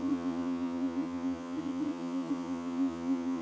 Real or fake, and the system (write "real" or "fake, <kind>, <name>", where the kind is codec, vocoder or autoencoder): fake, vocoder, Vocos